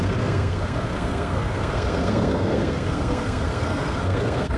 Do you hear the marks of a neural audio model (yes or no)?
yes